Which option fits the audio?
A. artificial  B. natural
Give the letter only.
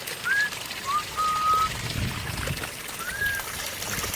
B